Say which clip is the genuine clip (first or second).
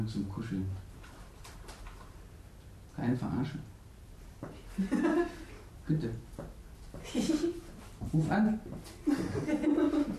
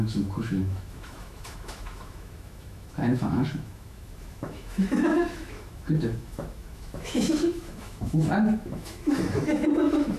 first